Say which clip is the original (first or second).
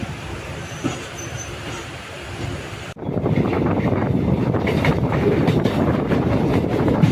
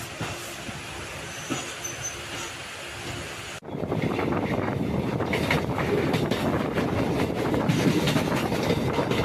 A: second